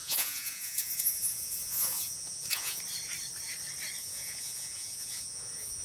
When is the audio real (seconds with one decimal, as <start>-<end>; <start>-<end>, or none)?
2.8-4.0